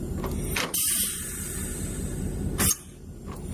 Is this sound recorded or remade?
remade